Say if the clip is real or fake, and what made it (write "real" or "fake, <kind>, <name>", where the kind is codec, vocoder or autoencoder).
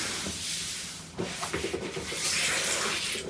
real